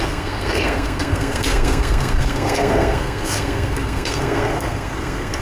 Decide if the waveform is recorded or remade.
remade